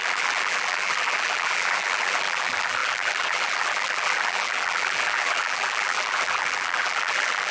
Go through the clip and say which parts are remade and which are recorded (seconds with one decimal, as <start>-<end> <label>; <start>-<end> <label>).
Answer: 0.0-7.5 remade

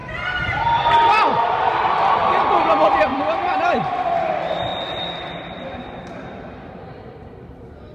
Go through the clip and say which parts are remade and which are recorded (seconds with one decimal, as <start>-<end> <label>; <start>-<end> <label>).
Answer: 0.0-1.3 remade; 1.3-2.0 recorded; 2.0-4.7 remade; 4.7-5.6 recorded; 5.6-7.9 remade

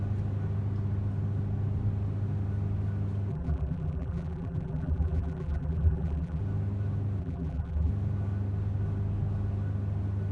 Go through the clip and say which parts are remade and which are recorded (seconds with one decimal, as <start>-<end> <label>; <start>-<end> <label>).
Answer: 0.0-3.3 recorded; 3.3-6.4 remade; 6.4-7.2 recorded; 7.2-7.9 remade; 7.9-10.3 recorded

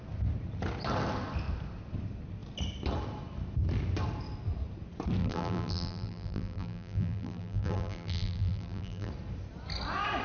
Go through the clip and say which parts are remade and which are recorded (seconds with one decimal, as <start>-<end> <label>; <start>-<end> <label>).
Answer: 0.0-5.2 recorded; 5.2-9.1 remade; 9.1-10.2 recorded

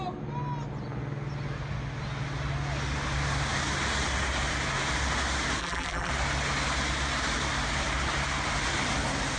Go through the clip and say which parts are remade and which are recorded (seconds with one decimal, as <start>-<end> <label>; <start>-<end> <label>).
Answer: 0.0-5.6 recorded; 5.6-6.1 remade; 6.1-9.4 recorded